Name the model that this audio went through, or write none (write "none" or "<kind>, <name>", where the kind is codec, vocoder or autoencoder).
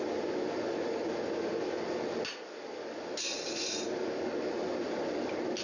none